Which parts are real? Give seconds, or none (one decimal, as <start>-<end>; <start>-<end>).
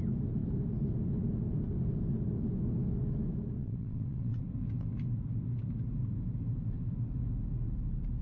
0.0-3.6; 4.4-8.2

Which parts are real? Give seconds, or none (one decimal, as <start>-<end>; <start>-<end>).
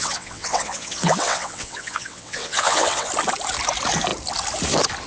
3.1-5.1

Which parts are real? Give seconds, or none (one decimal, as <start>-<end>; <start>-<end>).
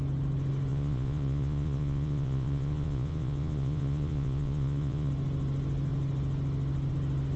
0.0-0.7; 5.1-7.4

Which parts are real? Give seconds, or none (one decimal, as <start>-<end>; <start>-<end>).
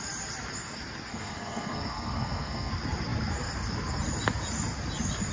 0.0-1.1; 2.7-5.3